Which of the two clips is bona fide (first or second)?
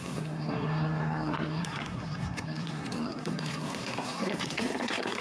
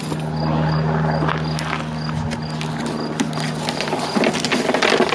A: second